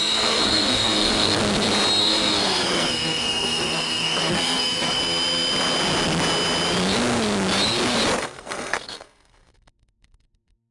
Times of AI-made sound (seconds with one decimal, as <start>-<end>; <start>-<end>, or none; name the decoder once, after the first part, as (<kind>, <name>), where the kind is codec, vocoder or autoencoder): 0.0-1.4 (codec, SNAC); 2.0-5.0; 8.2-10.7